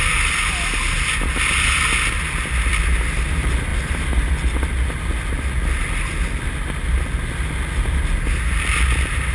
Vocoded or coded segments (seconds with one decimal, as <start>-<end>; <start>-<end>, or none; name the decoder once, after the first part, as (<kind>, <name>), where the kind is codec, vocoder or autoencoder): none